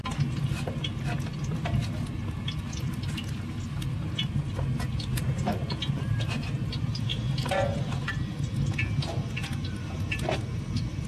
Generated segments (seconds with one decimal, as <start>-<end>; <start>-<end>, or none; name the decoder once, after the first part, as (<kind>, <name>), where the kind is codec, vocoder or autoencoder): none